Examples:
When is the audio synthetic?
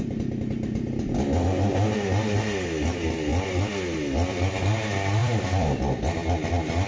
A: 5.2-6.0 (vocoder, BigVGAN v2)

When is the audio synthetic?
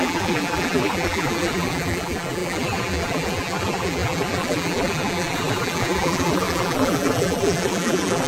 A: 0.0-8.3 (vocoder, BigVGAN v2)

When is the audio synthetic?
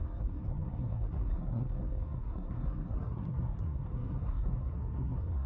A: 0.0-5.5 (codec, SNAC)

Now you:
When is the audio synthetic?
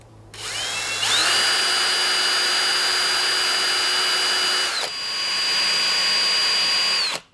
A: none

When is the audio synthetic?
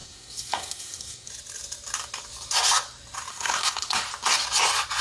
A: 0.0-1.3 (codec, SNAC); 3.3-4.0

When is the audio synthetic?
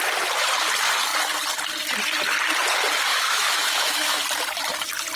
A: 3.1-4.2 (autoencoder, DAC-VAE)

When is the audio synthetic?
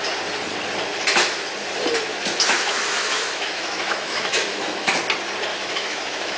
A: 2.1-5.0 (autoencoder, DAC-VAE); 5.5-6.4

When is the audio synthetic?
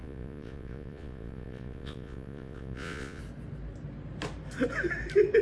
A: 0.0-3.2 (vocoder, Vocos)